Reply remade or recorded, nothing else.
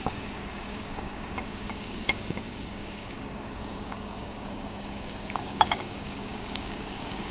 remade